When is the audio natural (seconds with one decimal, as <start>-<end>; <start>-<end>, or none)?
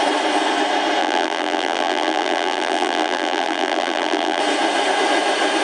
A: 0.0-1.0; 4.4-5.6